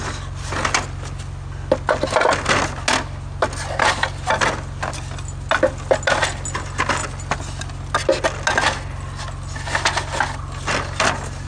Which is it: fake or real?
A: real